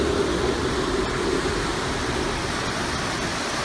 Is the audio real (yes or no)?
yes